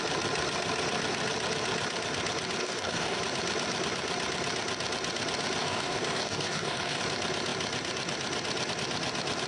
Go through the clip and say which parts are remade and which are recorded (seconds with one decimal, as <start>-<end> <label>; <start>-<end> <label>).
0.0-2.6 recorded; 2.6-3.2 remade; 3.2-5.6 recorded; 5.6-7.0 remade; 7.0-9.5 recorded